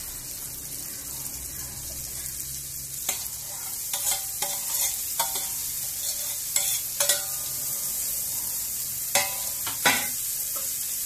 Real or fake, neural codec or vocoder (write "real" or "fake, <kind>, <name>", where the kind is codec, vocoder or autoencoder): real